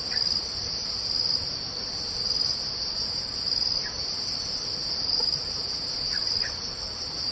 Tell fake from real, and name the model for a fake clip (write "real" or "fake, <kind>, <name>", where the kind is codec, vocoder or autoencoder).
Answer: real